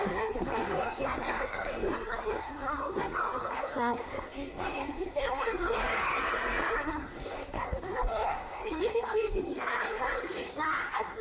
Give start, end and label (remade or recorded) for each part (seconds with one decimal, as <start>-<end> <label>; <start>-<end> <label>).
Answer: 0.0-11.2 remade